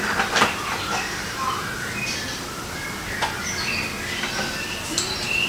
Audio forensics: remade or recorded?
remade